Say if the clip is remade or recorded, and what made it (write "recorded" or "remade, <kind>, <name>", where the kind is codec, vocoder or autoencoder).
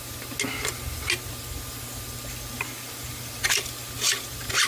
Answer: recorded